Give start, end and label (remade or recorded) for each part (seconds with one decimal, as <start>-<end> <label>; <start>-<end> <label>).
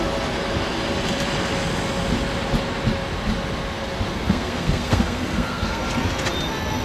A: 0.0-4.1 recorded; 4.1-5.8 remade; 5.8-6.8 recorded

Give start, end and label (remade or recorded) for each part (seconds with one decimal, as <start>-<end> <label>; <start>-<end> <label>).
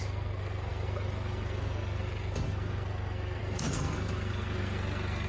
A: 0.0-5.3 remade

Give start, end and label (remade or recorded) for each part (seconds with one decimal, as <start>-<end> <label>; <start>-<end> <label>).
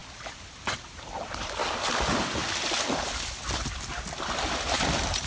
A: 0.0-5.3 recorded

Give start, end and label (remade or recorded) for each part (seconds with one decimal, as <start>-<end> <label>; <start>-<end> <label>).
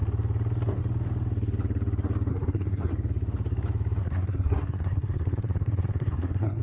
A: 0.0-2.3 recorded; 2.3-2.9 remade; 2.9-4.0 recorded; 4.0-6.6 remade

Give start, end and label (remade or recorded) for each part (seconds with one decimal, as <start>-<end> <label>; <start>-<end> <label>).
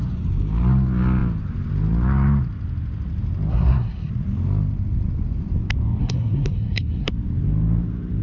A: 0.0-3.5 recorded; 3.5-4.1 remade; 4.1-6.0 recorded; 6.0-7.1 remade; 7.1-8.2 recorded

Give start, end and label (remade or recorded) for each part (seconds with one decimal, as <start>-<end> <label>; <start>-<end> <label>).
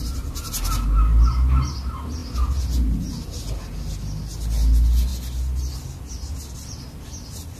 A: 0.0-7.6 recorded